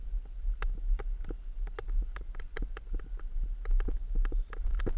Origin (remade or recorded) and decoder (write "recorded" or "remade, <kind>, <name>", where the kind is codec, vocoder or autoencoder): recorded